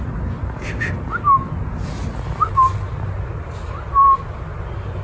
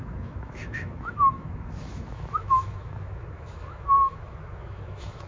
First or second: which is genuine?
first